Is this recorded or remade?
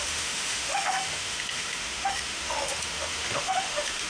remade